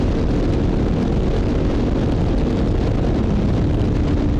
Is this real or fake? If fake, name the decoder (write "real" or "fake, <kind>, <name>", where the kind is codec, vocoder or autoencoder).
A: real